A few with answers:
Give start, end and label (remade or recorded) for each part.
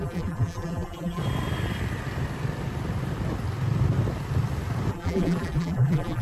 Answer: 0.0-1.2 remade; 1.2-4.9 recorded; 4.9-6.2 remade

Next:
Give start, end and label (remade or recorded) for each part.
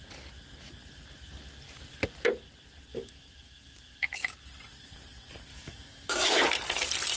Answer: 0.0-2.9 recorded; 2.9-4.3 remade; 4.3-5.5 recorded; 5.5-6.4 remade; 6.4-7.2 recorded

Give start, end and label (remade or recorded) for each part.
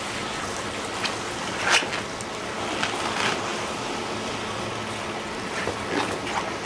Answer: 0.0-6.7 recorded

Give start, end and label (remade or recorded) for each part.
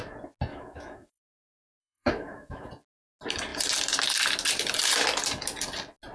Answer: 0.0-0.5 recorded; 0.5-1.2 remade; 1.2-1.8 recorded; 1.8-2.7 remade; 2.7-6.1 recorded